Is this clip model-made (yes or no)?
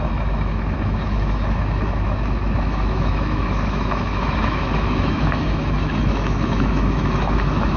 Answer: yes